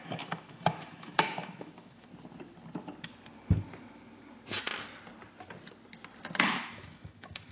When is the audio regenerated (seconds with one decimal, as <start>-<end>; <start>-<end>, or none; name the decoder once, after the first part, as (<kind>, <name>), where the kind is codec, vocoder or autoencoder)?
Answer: 0.0-2.1 (autoencoder, DAC-VAE); 6.4-7.5